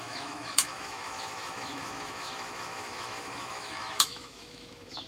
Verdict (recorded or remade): remade